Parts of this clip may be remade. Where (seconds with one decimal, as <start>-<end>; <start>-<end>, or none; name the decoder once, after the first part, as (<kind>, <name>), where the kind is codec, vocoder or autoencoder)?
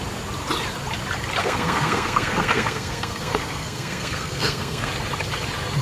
1.4-4.9 (codec, SNAC)